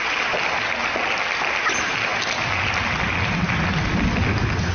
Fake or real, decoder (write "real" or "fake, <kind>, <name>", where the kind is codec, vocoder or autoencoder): real